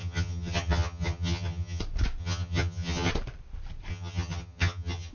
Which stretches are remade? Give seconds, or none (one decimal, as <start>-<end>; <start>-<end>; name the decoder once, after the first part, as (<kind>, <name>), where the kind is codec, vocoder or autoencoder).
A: 0.0-1.8 (vocoder, HiFi-GAN); 2.2-3.1; 3.9-5.1